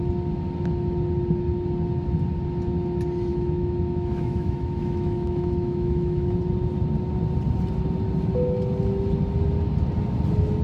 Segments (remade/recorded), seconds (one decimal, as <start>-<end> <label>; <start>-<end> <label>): 0.0-3.3 recorded; 3.3-6.4 remade; 6.4-10.6 recorded